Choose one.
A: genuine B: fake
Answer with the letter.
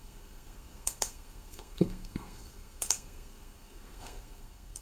B